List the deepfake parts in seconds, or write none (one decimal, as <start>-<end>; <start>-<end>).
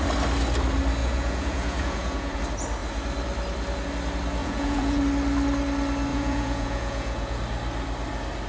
1.0-2.4; 4.4-5.0; 6.1-7.4